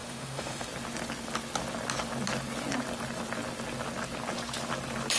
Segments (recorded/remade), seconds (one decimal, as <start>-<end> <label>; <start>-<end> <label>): 0.0-0.7 remade; 0.7-5.2 recorded